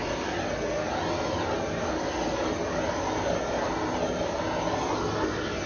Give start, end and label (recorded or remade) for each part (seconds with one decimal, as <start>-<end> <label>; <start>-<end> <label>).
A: 0.0-5.7 recorded